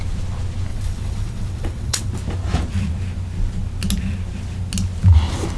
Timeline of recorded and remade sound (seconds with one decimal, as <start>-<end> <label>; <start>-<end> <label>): 0.0-0.7 recorded; 0.7-2.1 remade; 2.1-5.6 recorded